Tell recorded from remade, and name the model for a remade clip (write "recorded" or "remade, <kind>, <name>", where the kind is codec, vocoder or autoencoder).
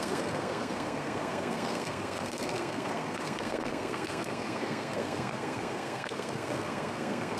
remade, codec, SNAC